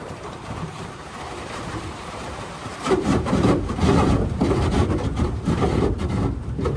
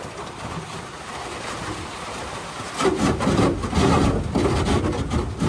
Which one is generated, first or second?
first